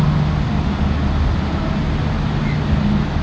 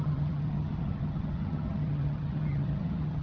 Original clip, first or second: first